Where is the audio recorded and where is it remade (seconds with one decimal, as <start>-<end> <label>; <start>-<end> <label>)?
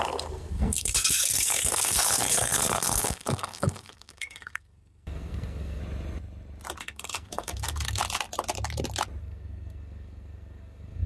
0.0-5.8 remade; 5.8-6.8 recorded; 6.8-8.0 remade; 8.0-9.2 recorded; 9.2-11.1 remade